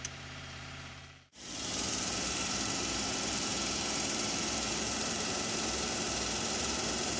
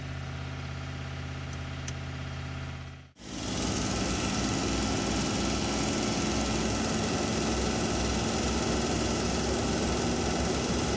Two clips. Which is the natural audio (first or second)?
second